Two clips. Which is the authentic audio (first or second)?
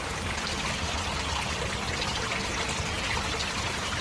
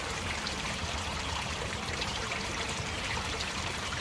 first